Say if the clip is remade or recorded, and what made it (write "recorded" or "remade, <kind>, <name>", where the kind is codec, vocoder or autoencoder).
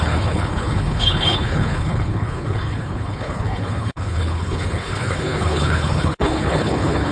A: remade, codec, HILCodec